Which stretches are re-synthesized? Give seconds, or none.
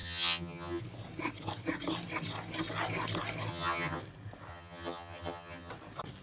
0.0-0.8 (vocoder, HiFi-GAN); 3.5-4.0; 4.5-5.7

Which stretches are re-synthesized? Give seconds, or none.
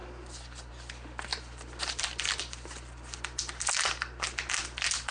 0.0-0.7 (vocoder, BigVGAN v2); 1.3-4.4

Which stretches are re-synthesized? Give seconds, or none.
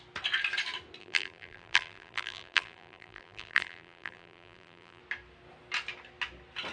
1.0-5.0 (vocoder, BigVGAN v2)